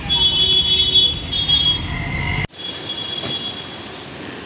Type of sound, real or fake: real